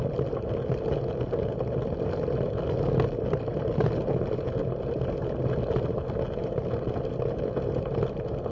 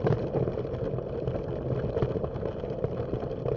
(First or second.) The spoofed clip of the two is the second